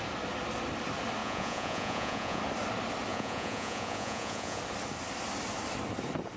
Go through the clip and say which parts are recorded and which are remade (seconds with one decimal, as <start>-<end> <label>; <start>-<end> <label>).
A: 0.0-1.2 recorded; 1.2-2.4 remade; 2.4-3.1 recorded; 3.1-4.6 remade; 4.6-6.4 recorded